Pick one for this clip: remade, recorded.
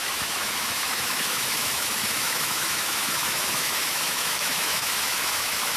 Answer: remade